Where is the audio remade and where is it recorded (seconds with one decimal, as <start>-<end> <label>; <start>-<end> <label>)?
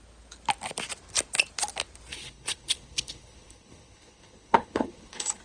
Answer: 0.0-2.1 recorded; 2.1-5.4 remade